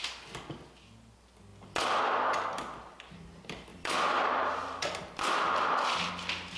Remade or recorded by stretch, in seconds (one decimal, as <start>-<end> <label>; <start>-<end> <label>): 0.0-3.7 recorded; 3.7-6.1 remade; 6.1-6.6 recorded